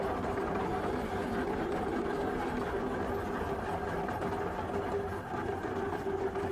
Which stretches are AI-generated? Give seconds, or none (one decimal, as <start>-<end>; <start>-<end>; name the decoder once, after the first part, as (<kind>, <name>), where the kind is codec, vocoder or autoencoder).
none